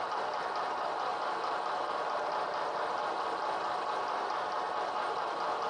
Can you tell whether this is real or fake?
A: real